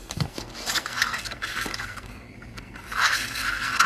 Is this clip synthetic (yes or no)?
yes